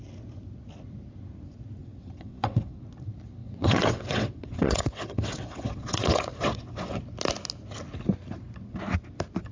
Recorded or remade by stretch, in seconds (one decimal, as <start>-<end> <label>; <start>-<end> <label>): 0.0-1.8 recorded; 1.8-2.8 remade; 2.8-3.4 recorded; 3.4-7.0 remade; 7.0-9.5 recorded